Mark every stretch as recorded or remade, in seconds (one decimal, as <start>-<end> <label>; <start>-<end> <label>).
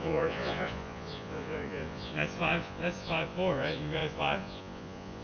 0.0-5.2 remade